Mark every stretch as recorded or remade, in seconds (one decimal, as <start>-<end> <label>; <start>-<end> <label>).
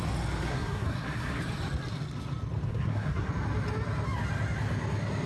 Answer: 0.0-0.5 recorded; 0.5-1.4 remade; 1.4-2.7 recorded; 2.7-3.3 remade; 3.3-5.3 recorded